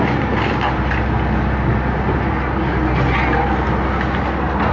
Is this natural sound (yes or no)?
yes